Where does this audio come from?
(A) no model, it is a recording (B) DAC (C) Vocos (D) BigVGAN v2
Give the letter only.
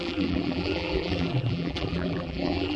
D